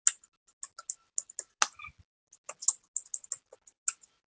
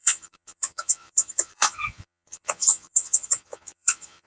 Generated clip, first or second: second